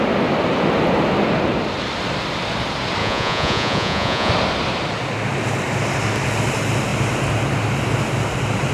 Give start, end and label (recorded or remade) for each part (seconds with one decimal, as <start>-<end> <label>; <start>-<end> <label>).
0.0-3.0 recorded; 3.0-4.3 remade; 4.3-8.7 recorded